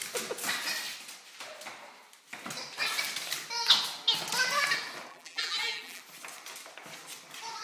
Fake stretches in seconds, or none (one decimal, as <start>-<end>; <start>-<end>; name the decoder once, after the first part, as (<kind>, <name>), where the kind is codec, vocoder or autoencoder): 5.1-6.0 (vocoder, BigVGAN v2)